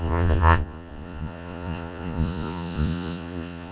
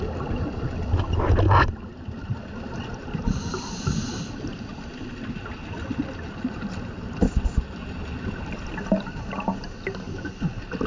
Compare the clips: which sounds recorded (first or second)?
second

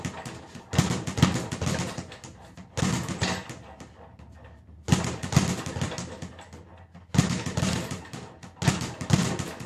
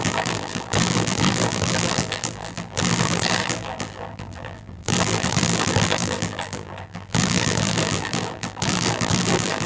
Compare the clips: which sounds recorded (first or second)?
first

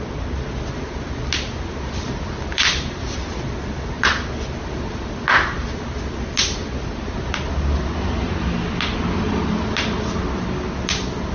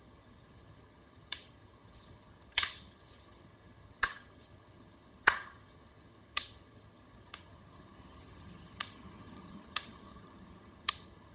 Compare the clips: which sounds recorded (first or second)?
first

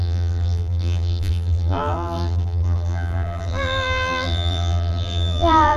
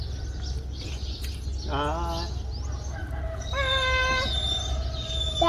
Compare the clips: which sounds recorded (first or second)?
second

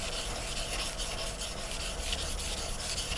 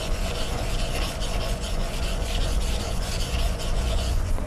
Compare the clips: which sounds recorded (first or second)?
first